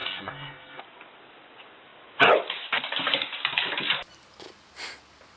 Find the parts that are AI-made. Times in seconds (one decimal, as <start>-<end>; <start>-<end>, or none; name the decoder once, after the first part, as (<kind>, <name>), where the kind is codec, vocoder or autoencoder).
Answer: 0.0-0.8 (codec, SNAC)